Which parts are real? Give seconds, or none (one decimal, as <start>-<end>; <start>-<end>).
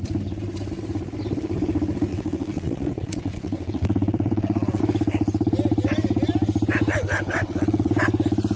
0.0-2.1; 4.8-7.3; 7.9-8.6